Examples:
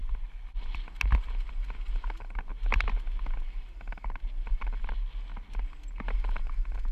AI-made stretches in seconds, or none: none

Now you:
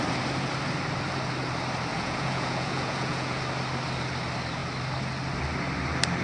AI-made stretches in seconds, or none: 1.9-3.4 (vocoder, Vocos)